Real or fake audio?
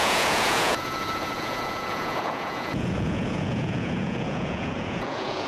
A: fake